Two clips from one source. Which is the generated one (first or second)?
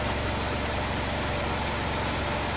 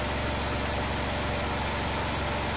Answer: first